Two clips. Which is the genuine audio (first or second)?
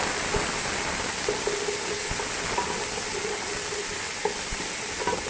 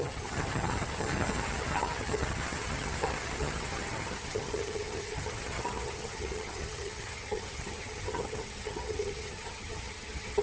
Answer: first